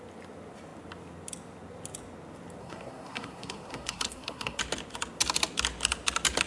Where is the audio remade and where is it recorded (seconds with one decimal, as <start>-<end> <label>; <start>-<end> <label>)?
0.0-2.6 recorded; 2.6-4.6 remade; 4.6-6.5 recorded